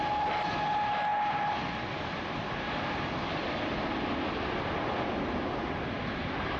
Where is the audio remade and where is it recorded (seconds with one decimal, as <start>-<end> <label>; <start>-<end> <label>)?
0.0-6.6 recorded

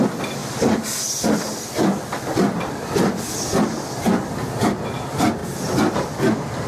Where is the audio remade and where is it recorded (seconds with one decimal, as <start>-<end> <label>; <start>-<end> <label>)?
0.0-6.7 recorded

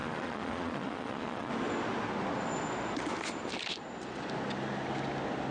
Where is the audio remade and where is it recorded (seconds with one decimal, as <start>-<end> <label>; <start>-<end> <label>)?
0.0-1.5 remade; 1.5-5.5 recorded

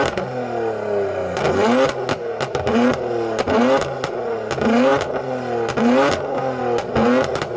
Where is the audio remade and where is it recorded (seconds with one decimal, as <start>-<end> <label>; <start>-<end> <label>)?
0.0-7.6 recorded

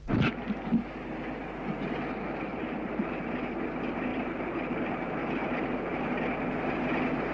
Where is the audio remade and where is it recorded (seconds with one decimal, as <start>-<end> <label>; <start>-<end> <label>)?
0.0-2.5 recorded; 2.5-3.3 remade; 3.3-4.1 recorded; 4.1-6.0 remade; 6.0-7.3 recorded

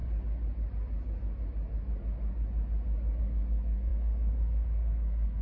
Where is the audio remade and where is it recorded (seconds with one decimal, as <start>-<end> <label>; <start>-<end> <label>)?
0.0-3.2 recorded; 3.2-5.4 remade